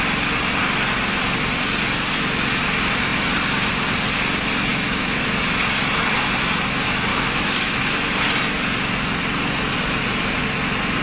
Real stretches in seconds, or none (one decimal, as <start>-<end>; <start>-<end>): 0.0-4.7; 5.3-7.1; 7.9-11.0

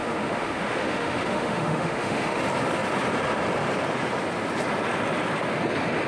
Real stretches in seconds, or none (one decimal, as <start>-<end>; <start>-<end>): 2.4-6.1

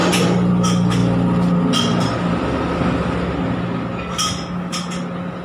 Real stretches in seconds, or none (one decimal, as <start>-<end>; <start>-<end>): 0.0-5.4

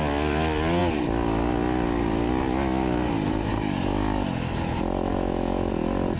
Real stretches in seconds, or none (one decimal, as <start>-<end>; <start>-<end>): 0.0-5.1; 5.7-6.2

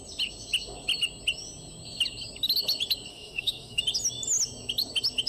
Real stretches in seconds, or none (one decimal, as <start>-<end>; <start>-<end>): 0.0-3.1; 3.8-5.3

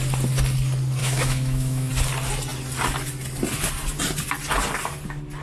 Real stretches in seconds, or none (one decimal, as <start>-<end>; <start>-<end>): 0.0-1.0; 1.9-5.4

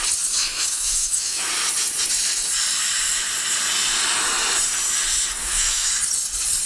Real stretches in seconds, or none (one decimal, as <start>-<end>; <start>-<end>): 0.0-0.4; 1.5-5.4; 5.9-6.7